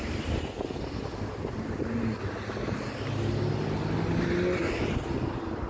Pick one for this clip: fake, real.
real